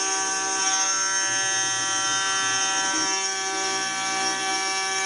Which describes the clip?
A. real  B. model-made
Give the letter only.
A